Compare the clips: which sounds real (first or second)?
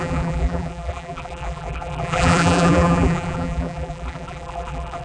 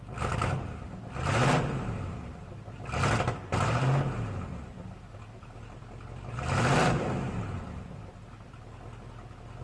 second